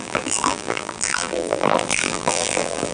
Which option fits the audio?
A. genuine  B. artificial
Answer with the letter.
B